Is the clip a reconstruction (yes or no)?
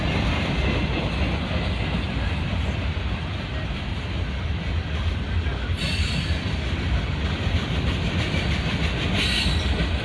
no